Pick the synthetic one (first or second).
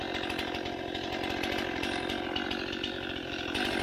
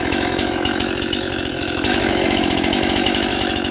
second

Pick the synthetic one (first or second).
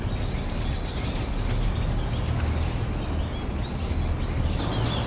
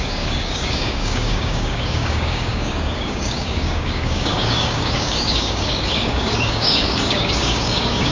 second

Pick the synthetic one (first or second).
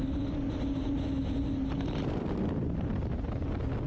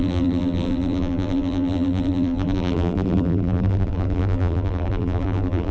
second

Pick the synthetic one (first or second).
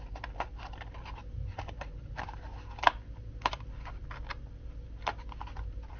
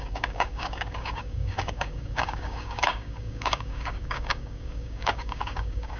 second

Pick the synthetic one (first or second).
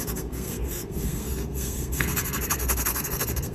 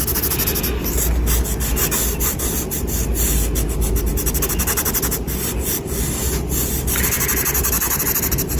first